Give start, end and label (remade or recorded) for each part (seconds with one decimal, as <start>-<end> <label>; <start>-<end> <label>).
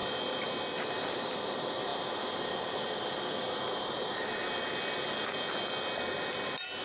0.0-6.8 recorded